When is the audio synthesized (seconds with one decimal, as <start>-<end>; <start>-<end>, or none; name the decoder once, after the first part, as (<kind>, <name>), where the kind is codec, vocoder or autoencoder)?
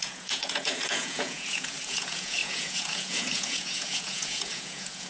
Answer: 0.0-5.1 (vocoder, Vocos)